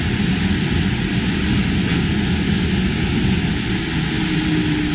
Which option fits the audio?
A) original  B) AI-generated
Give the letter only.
A